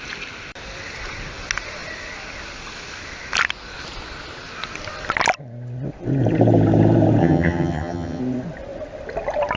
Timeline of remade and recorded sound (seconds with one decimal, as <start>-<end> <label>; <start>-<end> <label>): 0.0-7.2 recorded; 7.2-8.2 remade; 8.2-9.6 recorded